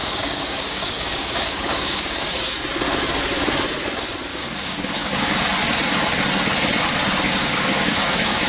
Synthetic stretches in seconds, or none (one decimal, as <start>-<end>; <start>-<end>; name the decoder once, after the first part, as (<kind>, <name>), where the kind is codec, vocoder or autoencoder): 0.0-2.4 (codec, DAC); 4.3-5.3; 7.4-8.5